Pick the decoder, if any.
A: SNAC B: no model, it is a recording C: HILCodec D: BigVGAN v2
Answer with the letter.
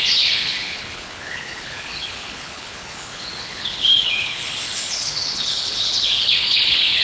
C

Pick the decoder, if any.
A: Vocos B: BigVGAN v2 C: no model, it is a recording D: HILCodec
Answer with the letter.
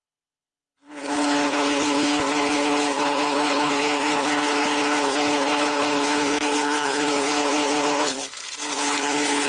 D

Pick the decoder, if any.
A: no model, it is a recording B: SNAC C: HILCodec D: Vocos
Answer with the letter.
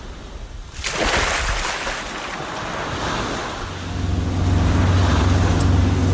A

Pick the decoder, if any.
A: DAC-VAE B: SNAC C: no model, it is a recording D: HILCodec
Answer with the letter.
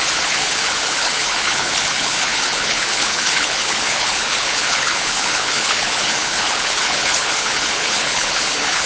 D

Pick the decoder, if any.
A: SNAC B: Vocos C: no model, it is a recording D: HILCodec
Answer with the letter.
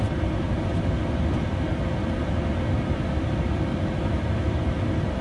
C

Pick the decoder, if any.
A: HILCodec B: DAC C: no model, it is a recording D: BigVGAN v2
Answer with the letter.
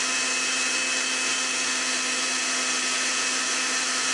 C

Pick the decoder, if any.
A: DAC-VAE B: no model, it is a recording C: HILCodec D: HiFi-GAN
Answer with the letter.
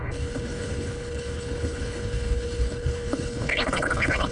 C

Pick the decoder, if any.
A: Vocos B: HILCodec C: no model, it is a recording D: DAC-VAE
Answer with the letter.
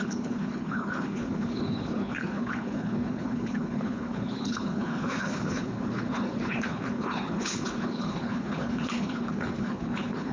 B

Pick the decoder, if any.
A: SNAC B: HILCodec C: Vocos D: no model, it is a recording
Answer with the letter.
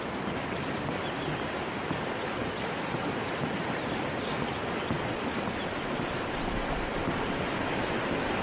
D